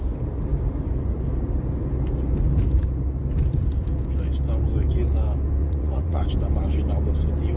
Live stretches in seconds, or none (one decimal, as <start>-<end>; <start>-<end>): 0.0-5.6; 6.2-7.6